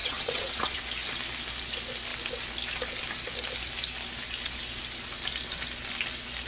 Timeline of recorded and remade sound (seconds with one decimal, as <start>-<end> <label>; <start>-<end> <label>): 0.0-0.8 remade; 0.8-6.5 recorded